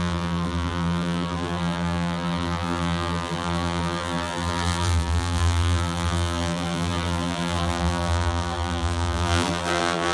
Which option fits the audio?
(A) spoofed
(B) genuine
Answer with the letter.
A